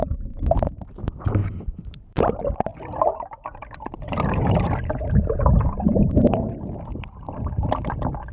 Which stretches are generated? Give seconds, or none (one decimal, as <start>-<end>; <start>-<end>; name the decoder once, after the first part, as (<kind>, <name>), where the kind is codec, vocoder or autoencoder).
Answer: 1.4-2.2 (vocoder, BigVGAN v2); 2.7-7.5